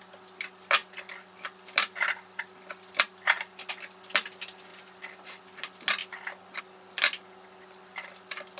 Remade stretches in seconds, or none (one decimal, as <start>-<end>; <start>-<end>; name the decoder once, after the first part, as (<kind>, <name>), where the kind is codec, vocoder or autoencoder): 4.7-5.4 (vocoder, BigVGAN v2)